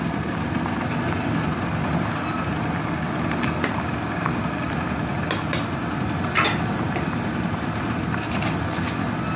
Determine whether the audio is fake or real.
real